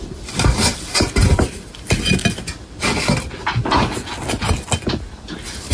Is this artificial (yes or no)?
no